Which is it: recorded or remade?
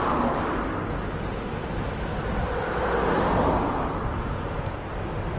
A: recorded